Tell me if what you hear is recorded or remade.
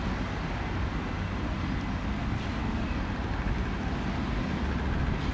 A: recorded